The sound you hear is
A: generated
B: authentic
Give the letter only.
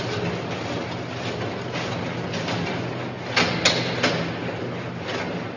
B